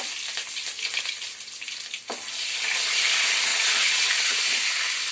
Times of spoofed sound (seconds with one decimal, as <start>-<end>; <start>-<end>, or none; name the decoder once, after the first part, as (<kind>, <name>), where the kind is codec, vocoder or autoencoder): 3.5-4.4 (vocoder, WaveNeXt)